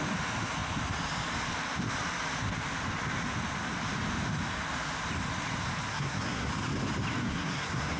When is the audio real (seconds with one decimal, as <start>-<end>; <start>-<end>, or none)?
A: 0.0-5.9; 6.5-7.2